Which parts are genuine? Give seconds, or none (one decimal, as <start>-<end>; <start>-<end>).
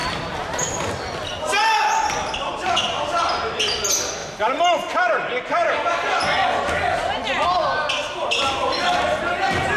0.9-4.2; 6.5-9.8